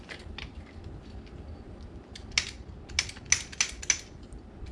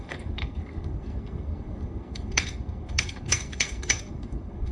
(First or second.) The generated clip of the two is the second